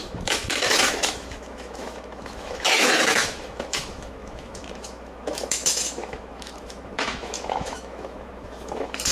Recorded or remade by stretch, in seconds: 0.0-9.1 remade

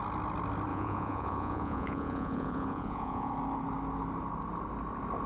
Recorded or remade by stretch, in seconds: 0.0-0.7 recorded; 0.7-3.3 remade; 3.3-5.3 recorded

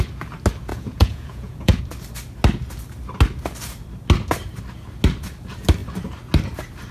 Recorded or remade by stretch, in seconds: 0.0-0.7 recorded; 0.7-1.8 remade; 1.8-6.9 recorded

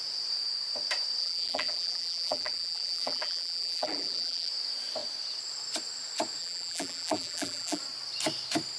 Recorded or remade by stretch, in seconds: 0.0-1.2 recorded; 1.2-4.5 remade; 4.5-6.4 recorded; 6.4-7.8 remade; 7.8-8.8 recorded

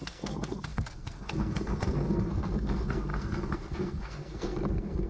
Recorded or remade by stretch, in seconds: 0.0-5.1 remade

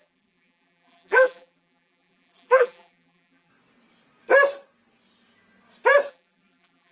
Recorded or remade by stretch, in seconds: 0.0-3.5 remade; 3.5-6.1 recorded; 6.1-6.9 remade